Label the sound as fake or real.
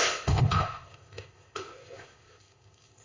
fake